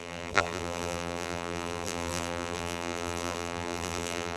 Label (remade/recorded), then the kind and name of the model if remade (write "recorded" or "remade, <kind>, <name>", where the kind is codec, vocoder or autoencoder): remade, vocoder, BigVGAN v2